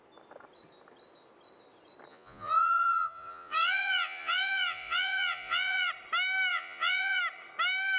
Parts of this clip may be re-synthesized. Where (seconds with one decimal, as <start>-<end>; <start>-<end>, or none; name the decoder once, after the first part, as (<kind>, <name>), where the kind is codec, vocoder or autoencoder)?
2.1-5.9 (vocoder, Vocos); 6.5-7.2